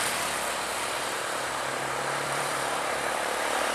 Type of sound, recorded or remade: remade